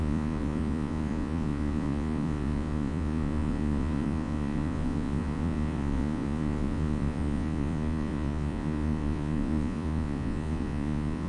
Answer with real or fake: fake